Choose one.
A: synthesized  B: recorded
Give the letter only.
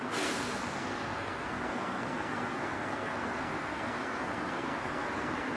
A